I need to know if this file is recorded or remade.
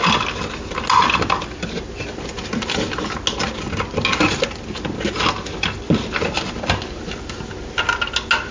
recorded